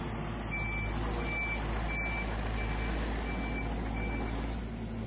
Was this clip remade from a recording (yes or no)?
no